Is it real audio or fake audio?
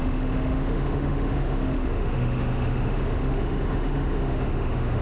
fake